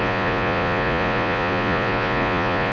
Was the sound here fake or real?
fake